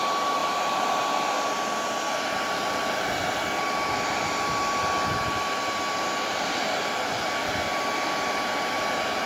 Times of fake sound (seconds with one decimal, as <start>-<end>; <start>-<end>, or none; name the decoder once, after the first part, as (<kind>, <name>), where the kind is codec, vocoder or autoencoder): 0.4-0.9 (vocoder, BigVGAN v2)